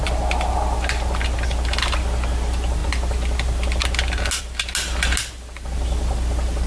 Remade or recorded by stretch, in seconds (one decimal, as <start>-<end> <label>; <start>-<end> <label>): 0.0-6.7 recorded

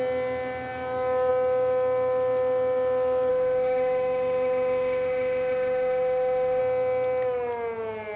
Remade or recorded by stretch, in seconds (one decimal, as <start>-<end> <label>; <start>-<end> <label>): 0.0-3.3 recorded; 3.3-6.6 remade; 6.6-8.2 recorded

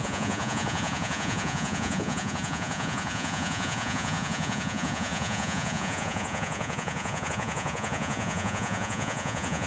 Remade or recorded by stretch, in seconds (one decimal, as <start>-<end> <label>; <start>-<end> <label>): 0.0-9.7 remade

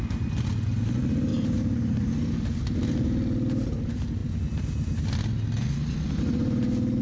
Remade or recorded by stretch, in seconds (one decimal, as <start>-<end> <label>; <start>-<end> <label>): 0.0-1.3 recorded; 1.3-2.1 remade; 2.1-7.0 recorded